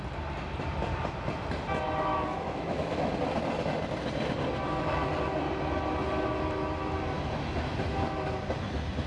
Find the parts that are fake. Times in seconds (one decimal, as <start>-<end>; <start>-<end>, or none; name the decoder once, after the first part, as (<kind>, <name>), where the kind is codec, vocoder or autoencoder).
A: 2.1-3.1 (autoencoder, DAC-VAE)